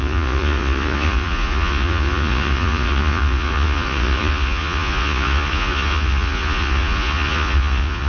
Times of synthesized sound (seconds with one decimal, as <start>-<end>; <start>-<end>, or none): 0.0-8.1